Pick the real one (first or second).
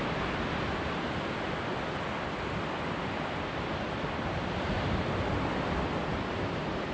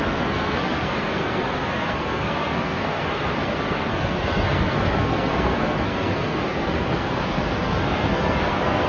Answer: first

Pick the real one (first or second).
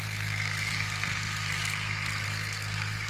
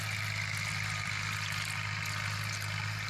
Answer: second